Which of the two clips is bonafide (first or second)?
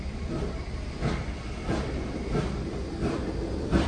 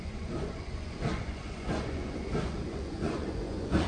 first